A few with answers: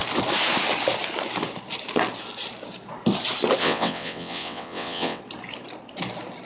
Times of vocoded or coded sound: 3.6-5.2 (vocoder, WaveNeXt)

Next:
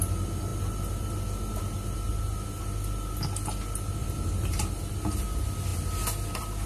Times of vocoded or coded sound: 4.0-4.9 (vocoder, BigVGAN v2)

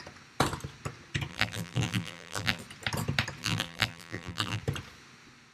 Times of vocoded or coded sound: 1.3-2.6 (vocoder, BigVGAN v2); 3.4-4.6

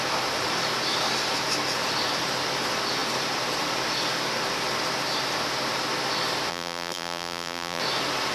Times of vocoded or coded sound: 6.5-7.8 (vocoder, BigVGAN v2)

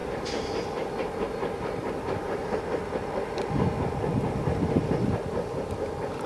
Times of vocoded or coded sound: 0.0-2.6 (vocoder, BigVGAN v2)